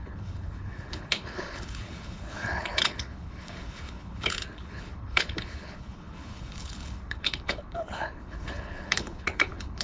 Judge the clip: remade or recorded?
remade